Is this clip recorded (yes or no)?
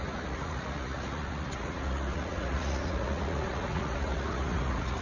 no